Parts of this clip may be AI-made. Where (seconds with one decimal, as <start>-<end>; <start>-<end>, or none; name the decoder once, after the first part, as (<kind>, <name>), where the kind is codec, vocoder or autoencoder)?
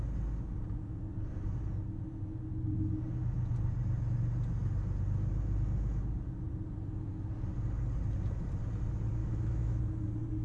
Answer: 9.2-9.8 (autoencoder, DAC-VAE)